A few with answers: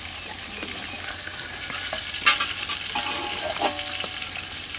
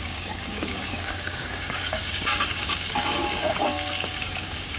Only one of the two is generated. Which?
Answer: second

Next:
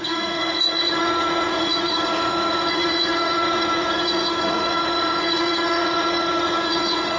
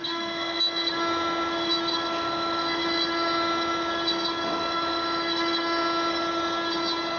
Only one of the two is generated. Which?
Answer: first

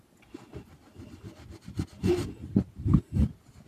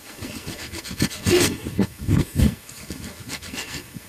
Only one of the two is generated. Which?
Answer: second